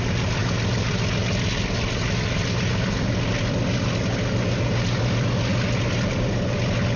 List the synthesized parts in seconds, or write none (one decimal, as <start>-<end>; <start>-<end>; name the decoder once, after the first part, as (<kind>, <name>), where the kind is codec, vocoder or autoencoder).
none